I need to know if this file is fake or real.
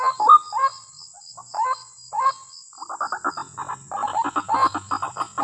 real